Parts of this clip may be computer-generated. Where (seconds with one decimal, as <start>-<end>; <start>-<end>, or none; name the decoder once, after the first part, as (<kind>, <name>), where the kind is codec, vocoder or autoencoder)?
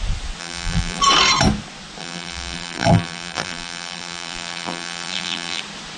0.4-1.0 (vocoder, BigVGAN v2); 2.0-5.6